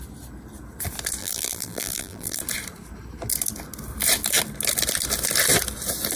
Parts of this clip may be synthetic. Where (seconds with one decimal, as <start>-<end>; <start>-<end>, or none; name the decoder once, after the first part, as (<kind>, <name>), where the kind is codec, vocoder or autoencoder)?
1.2-2.4 (vocoder, BigVGAN v2)